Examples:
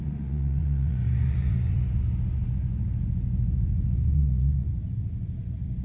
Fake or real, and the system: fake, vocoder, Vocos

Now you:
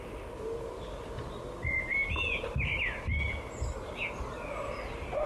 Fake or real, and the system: real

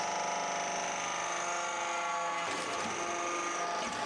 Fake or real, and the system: real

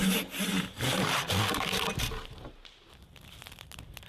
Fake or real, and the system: real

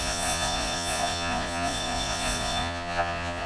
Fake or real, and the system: fake, vocoder, Vocos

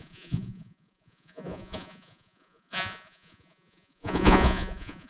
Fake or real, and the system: fake, vocoder, Vocos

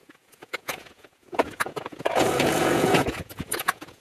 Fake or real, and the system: fake, vocoder, Vocos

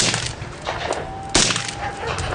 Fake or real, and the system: real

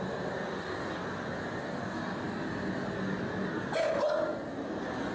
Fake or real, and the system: real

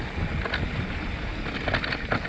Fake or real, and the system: real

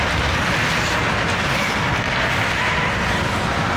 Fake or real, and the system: real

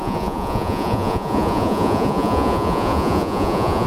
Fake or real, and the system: fake, vocoder, Vocos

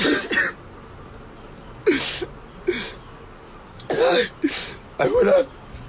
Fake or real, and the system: real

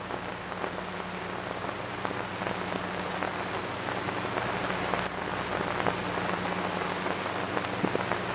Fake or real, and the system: real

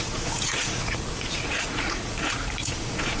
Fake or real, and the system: fake, vocoder, Vocos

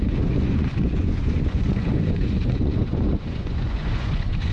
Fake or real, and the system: fake, vocoder, Vocos